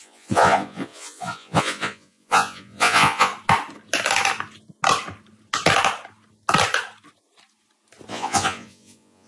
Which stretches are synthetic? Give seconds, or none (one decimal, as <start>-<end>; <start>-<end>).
0.0-3.3; 8.1-9.3